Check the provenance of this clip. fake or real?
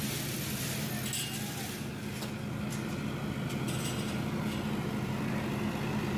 real